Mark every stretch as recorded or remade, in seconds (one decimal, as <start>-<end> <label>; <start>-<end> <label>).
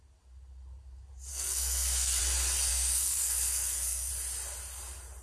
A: 0.0-1.3 recorded; 1.3-2.2 remade; 2.2-2.7 recorded; 2.7-4.1 remade; 4.1-5.2 recorded